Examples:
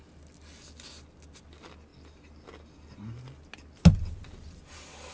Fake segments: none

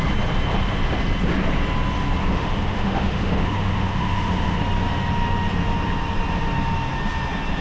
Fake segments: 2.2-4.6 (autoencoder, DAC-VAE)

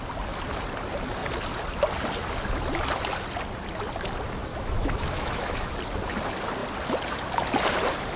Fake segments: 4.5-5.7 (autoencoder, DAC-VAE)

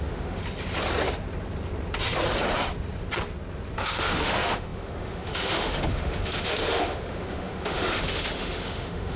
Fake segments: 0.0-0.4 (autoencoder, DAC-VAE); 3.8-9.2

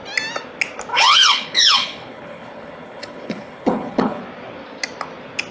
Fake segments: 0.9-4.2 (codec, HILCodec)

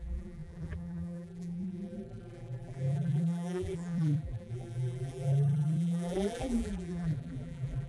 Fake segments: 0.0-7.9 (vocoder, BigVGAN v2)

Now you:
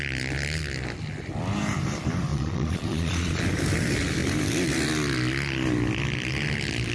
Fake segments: 2.3-3.4 (vocoder, Vocos)